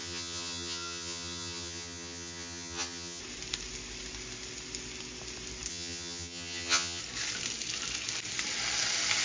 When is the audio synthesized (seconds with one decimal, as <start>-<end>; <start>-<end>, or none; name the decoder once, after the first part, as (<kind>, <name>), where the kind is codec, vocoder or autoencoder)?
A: 0.0-3.2 (vocoder, HiFi-GAN); 5.7-7.0